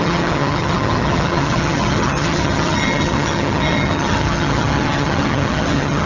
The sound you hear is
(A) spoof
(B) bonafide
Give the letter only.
A